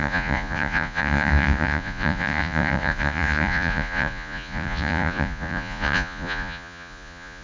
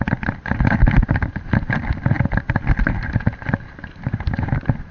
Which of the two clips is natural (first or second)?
second